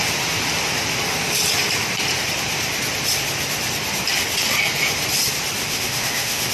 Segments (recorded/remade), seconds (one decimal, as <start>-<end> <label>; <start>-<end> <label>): 0.0-5.6 recorded; 5.6-6.5 remade